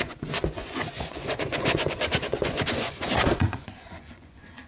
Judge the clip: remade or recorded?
remade